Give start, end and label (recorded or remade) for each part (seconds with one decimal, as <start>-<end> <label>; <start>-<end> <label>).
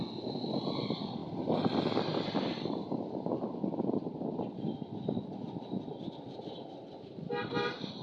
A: 0.0-8.0 recorded